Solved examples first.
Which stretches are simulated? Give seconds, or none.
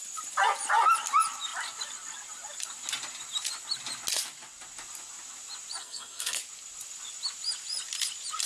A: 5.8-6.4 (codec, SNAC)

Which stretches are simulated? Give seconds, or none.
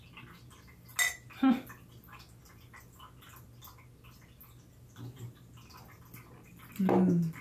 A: none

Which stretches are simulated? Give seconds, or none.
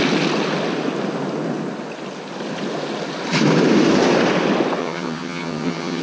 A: 4.8-6.0 (vocoder, HiFi-GAN)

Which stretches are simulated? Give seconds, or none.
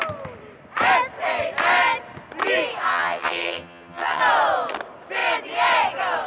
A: 2.9-4.2 (vocoder, HiFi-GAN)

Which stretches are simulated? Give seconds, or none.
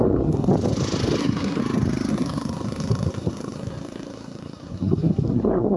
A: 0.0-0.5 (codec, SNAC); 1.2-1.6; 2.1-5.8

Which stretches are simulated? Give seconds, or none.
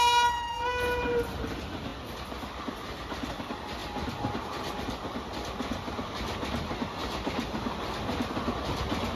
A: none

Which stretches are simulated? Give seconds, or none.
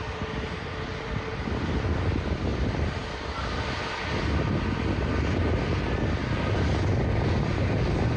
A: none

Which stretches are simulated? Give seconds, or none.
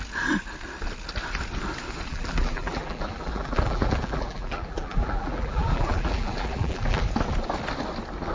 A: 2.1-7.0 (vocoder, BigVGAN v2)